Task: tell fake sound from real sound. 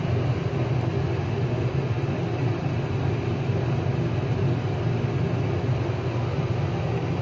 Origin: real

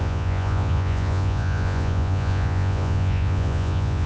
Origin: fake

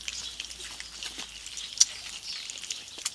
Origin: real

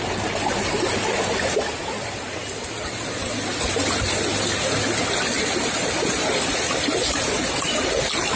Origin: real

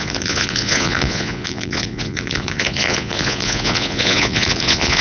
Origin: fake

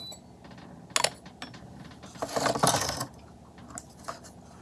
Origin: real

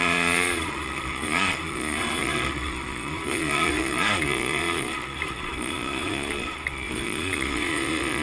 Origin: fake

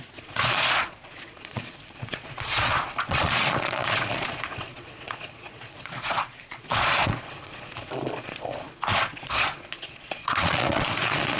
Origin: fake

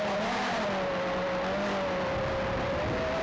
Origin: real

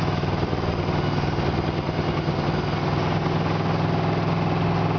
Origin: real